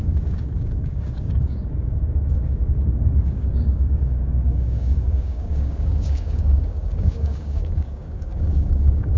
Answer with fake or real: fake